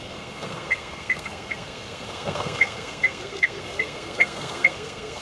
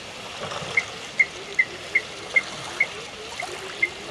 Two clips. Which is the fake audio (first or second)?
first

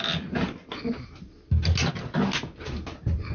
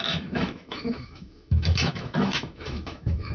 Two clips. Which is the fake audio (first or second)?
second